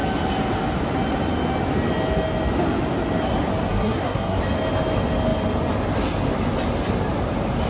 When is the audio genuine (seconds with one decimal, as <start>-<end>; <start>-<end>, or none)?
0.0-3.7; 4.4-7.7